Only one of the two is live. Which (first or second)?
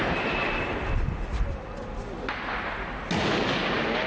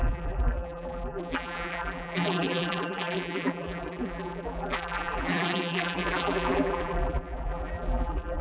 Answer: first